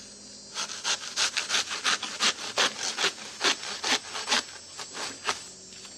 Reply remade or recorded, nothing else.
recorded